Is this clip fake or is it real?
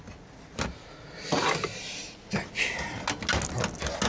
real